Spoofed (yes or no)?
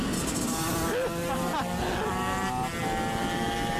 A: no